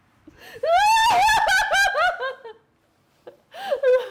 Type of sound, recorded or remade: remade